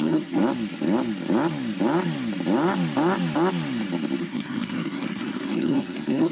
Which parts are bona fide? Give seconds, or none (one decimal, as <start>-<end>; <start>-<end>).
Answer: 0.4-4.2